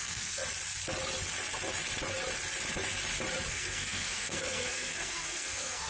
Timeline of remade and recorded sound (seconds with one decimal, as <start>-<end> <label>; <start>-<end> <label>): 0.0-0.4 remade; 0.4-3.5 recorded; 3.5-5.9 remade